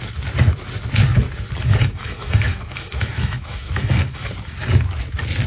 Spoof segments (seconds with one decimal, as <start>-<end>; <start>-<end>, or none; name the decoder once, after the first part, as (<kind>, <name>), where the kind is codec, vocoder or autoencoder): 1.8-4.3 (autoencoder, DAC-VAE)